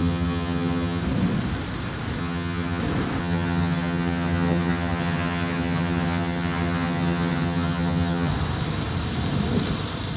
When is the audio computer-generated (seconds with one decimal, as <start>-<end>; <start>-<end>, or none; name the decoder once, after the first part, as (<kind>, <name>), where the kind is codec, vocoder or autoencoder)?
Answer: 0.0-1.0 (vocoder, HiFi-GAN); 2.2-2.8; 3.2-8.3